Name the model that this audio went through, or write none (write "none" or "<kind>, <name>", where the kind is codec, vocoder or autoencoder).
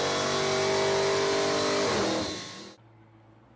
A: none